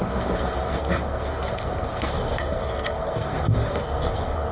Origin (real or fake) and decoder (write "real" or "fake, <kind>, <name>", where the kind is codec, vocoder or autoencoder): fake, codec, SNAC